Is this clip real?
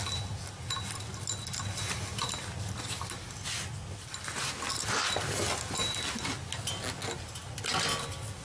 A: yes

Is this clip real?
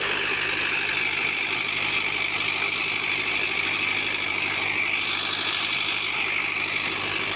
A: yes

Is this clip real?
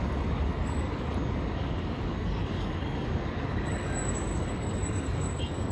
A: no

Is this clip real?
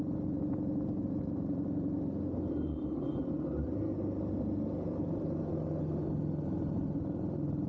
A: yes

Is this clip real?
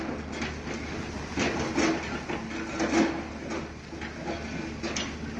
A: yes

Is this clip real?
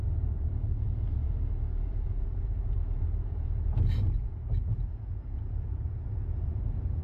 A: no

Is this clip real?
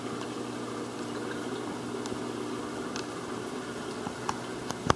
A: yes